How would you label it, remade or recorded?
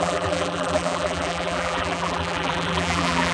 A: remade